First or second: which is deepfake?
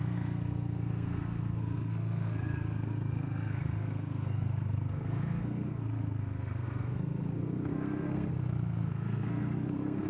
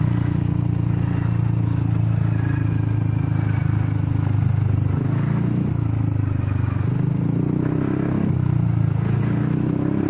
first